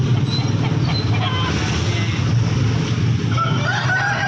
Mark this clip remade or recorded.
recorded